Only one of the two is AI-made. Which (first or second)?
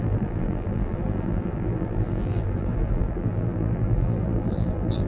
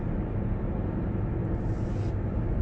first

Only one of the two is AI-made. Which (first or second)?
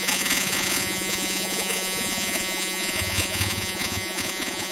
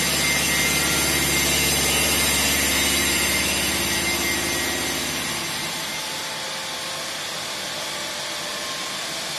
first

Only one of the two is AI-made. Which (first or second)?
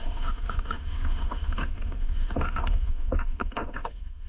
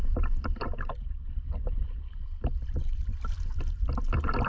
first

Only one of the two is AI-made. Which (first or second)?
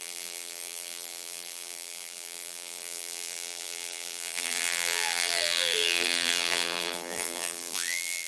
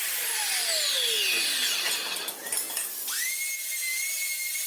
first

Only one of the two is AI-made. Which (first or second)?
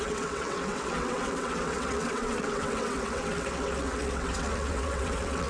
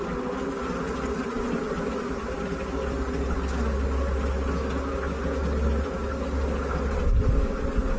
first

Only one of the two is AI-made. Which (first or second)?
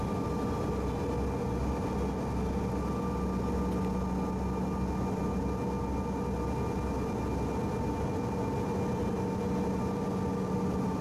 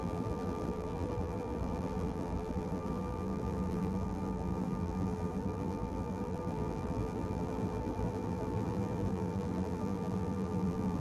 second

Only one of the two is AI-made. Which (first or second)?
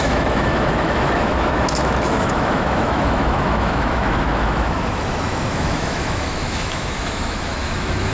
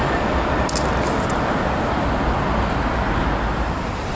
first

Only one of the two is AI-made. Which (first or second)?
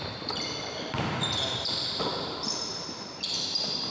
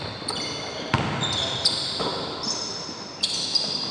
first